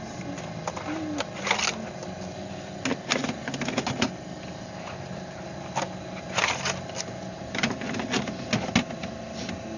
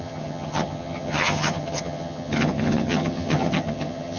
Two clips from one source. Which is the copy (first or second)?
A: second